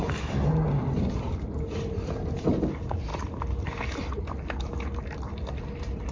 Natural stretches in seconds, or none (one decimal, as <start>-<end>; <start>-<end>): 0.0-6.1